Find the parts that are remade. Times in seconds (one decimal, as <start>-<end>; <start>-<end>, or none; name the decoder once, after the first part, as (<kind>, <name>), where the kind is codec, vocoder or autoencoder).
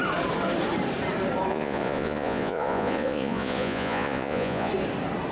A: 1.5-4.7 (vocoder, Vocos)